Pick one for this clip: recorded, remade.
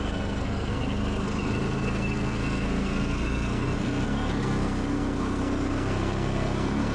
remade